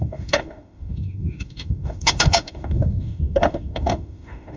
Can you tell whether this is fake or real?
fake